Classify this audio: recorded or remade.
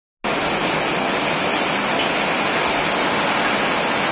recorded